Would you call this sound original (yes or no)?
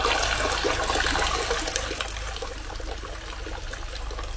yes